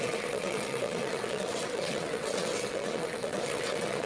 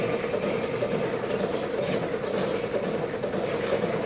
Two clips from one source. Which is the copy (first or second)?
first